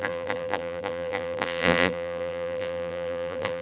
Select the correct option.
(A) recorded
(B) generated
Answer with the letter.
B